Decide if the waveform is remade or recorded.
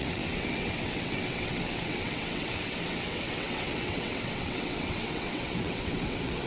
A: remade